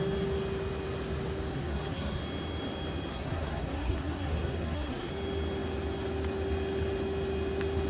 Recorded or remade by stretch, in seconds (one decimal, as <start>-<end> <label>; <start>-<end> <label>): 0.0-1.5 recorded; 1.5-2.2 remade; 2.2-3.1 recorded; 3.1-5.1 remade; 5.1-7.9 recorded